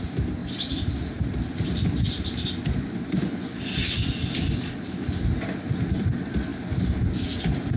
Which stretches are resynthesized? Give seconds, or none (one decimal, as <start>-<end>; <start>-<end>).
none